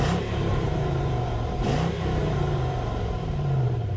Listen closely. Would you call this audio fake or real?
fake